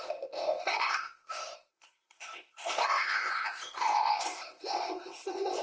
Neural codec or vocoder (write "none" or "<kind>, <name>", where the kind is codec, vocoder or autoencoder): codec, ZipCodec